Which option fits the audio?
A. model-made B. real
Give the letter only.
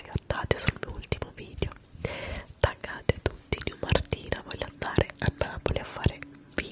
B